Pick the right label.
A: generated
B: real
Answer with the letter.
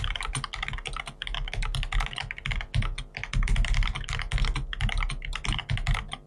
B